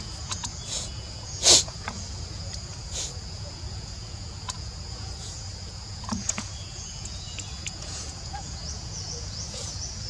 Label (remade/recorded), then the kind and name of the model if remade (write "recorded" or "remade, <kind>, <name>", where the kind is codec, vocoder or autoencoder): remade, vocoder, Vocos